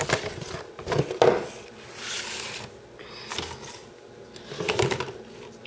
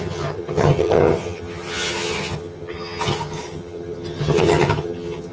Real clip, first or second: first